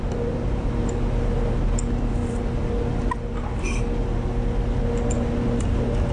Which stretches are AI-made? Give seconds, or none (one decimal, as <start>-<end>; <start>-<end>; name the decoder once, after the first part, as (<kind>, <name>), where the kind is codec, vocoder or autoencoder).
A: none